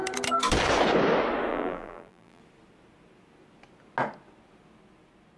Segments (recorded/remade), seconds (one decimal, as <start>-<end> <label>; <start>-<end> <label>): 0.0-1.5 recorded; 1.5-2.4 remade; 2.4-5.4 recorded